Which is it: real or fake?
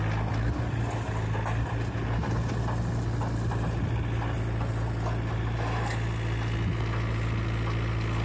real